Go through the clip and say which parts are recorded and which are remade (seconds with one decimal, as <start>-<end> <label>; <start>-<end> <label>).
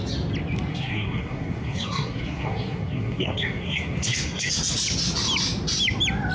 0.0-0.7 recorded; 0.7-4.5 remade; 4.5-6.3 recorded